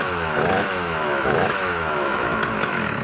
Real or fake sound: fake